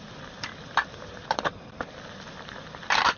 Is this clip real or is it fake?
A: fake